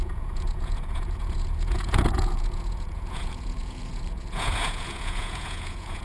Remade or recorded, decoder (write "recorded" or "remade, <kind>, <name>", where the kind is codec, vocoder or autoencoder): remade, vocoder, Vocos